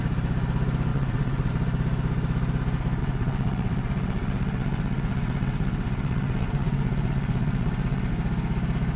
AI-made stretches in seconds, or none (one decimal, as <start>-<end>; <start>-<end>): 0.9-1.5; 3.0-8.1